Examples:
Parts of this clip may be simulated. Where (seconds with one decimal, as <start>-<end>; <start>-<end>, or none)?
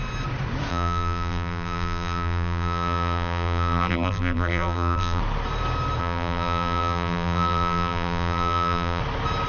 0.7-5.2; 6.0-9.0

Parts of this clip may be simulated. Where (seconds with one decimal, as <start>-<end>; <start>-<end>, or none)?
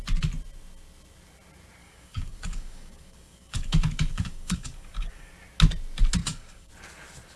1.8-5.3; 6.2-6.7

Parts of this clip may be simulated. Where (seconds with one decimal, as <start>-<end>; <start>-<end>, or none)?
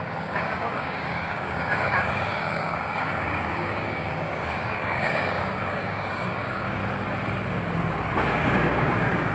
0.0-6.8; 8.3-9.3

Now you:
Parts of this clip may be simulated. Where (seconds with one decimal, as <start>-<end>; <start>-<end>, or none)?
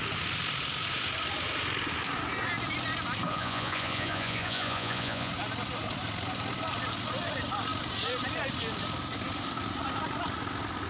3.3-5.3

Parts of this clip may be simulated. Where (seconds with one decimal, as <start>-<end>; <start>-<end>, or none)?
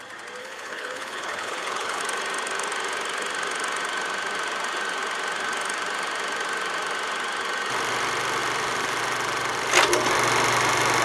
0.4-2.0